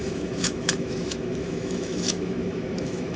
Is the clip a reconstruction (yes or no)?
yes